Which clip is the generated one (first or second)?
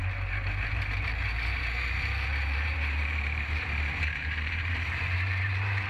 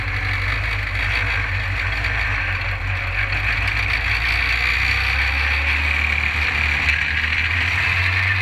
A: first